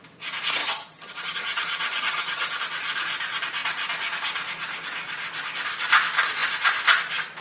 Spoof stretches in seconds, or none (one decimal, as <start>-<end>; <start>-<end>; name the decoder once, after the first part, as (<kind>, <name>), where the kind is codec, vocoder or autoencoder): 0.6-2.6 (vocoder, HiFi-GAN)

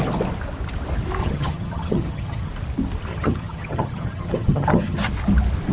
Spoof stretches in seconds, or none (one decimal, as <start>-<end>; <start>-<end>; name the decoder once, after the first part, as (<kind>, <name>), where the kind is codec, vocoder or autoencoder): 1.2-2.5 (vocoder, HiFi-GAN); 3.1-5.1

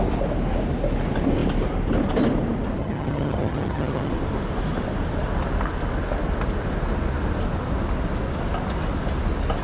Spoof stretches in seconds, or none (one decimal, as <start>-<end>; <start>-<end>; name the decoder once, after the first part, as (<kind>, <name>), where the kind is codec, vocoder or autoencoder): 2.8-4.1 (vocoder, HiFi-GAN)

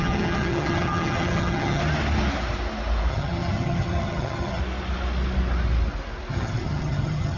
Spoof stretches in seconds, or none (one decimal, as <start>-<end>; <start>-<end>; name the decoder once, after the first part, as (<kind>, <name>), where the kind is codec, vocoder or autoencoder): 0.0-1.8 (vocoder, HiFi-GAN); 3.1-4.6; 6.3-7.4

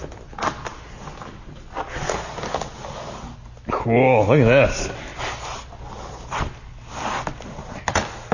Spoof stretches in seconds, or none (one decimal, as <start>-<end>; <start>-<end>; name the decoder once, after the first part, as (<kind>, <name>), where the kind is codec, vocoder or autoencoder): none

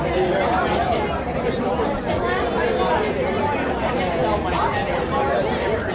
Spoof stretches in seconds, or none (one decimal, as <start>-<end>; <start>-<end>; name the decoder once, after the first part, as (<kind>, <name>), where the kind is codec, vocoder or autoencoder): none

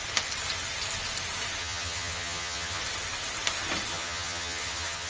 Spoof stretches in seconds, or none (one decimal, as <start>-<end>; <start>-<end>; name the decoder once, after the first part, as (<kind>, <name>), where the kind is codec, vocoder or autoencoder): 1.6-2.8 (vocoder, HiFi-GAN); 3.9-5.1